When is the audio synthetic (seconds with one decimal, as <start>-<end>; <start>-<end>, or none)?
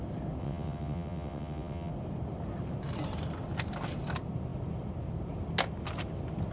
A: 0.4-1.9